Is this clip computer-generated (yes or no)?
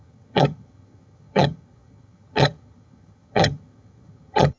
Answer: yes